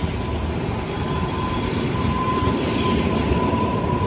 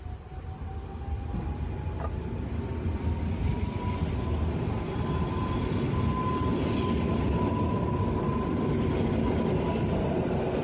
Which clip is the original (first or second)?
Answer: second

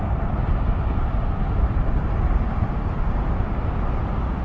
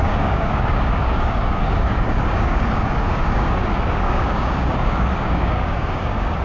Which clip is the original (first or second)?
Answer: first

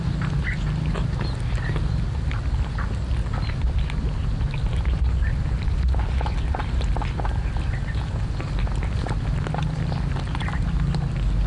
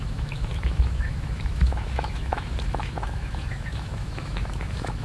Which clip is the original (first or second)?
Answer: first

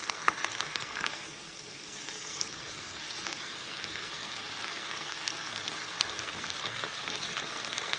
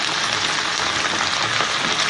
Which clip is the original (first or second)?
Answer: second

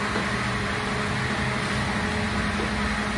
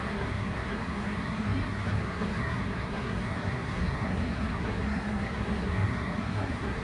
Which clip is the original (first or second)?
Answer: first